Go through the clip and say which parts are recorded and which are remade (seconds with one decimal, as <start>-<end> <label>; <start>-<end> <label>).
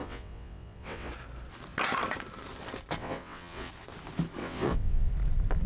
0.0-1.1 remade; 1.1-3.0 recorded; 3.0-3.7 remade; 3.7-4.4 recorded; 4.4-5.1 remade; 5.1-5.7 recorded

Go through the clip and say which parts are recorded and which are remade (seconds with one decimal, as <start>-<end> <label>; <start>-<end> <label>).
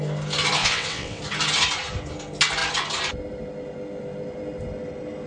0.0-0.6 recorded; 0.6-1.2 remade; 1.2-5.3 recorded